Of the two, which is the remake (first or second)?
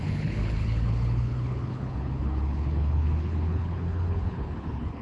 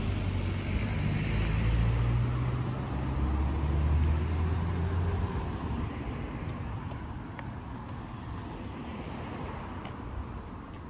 first